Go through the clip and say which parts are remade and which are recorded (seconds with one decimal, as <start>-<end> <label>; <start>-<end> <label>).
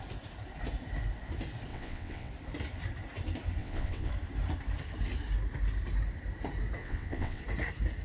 0.0-1.7 recorded; 1.7-2.3 remade; 2.3-3.6 recorded; 3.6-4.1 remade; 4.1-6.8 recorded; 6.8-7.4 remade; 7.4-8.0 recorded